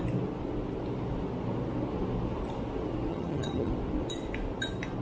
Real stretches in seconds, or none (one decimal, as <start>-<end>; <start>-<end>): 0.0-3.1; 3.7-5.0